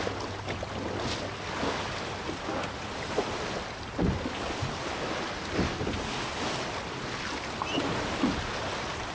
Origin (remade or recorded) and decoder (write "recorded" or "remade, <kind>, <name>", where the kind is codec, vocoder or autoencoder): recorded